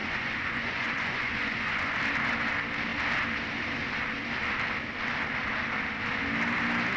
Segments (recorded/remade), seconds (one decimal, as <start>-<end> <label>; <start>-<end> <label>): 0.0-2.0 remade; 2.0-7.0 recorded